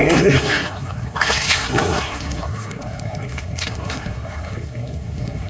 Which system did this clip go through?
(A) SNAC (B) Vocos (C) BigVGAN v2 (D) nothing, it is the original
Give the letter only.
A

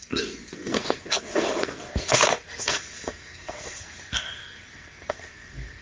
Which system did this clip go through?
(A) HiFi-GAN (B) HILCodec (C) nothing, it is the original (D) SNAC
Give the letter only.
D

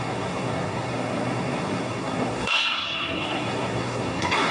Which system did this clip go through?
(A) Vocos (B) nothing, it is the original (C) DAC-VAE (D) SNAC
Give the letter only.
D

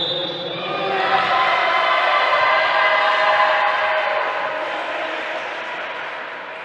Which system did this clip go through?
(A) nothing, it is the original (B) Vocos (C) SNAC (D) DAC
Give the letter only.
A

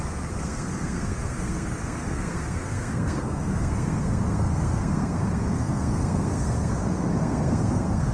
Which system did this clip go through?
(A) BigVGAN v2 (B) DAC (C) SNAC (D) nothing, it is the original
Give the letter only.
C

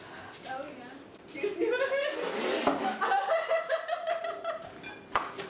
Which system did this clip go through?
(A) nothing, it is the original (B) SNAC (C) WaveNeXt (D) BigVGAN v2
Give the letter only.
A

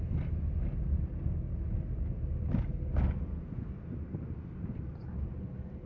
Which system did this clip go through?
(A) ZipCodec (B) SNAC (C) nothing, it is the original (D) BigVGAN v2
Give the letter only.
C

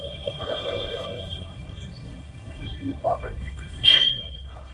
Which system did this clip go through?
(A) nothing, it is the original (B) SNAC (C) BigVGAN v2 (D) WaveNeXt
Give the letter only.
B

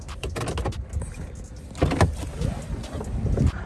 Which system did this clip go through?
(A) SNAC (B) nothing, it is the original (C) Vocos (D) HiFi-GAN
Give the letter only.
B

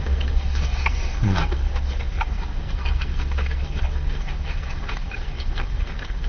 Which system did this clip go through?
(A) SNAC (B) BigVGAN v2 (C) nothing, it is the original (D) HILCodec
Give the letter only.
A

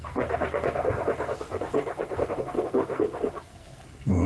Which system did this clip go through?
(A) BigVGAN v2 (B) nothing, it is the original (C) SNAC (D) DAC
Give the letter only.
C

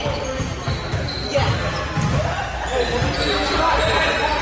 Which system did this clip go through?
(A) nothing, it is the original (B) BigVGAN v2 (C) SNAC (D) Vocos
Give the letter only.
A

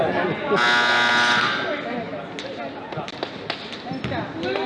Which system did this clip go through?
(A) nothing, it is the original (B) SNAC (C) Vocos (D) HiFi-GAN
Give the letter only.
A